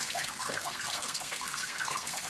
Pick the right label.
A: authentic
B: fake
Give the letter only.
B